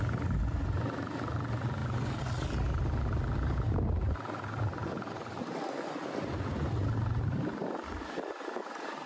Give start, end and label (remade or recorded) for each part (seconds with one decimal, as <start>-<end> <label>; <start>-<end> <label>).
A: 0.0-9.1 recorded